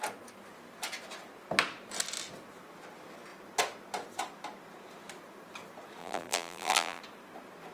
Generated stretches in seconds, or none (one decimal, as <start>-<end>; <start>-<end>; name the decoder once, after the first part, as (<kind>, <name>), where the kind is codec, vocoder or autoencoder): 6.0-7.0 (vocoder, BigVGAN v2)